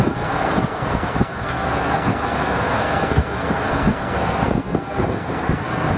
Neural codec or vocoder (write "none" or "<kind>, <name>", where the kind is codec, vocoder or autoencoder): codec, SNAC